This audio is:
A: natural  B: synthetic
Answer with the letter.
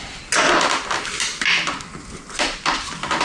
A